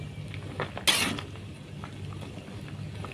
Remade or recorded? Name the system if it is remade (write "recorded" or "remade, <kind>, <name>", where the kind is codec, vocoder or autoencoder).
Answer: recorded